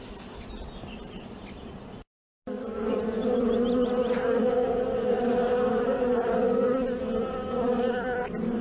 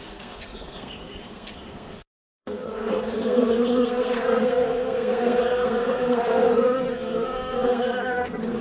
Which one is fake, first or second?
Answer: second